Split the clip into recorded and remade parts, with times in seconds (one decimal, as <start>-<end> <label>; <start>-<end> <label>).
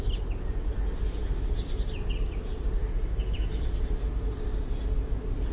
0.0-2.8 recorded; 2.8-3.6 remade; 3.6-5.5 recorded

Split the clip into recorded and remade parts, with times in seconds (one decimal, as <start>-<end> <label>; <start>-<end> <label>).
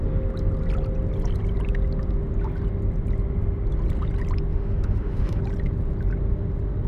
0.0-4.5 recorded; 4.5-5.4 remade; 5.4-6.9 recorded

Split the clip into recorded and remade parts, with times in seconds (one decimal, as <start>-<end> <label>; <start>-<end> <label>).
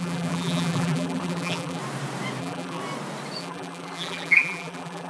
0.0-1.8 remade; 1.8-2.4 recorded; 2.4-2.8 remade; 2.8-3.4 recorded; 3.4-5.1 remade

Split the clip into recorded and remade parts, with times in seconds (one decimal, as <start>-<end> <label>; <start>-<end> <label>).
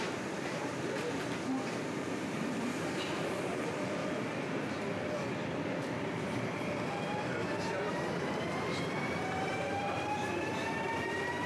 0.0-4.0 remade; 4.0-5.8 recorded; 5.8-11.5 remade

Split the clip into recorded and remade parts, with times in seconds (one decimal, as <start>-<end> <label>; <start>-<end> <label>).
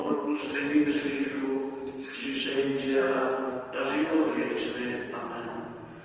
0.0-3.6 remade; 3.6-4.1 recorded; 4.1-4.6 remade; 4.6-6.0 recorded